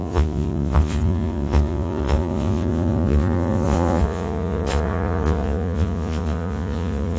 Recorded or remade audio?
remade